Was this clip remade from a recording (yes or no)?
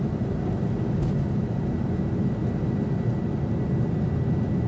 no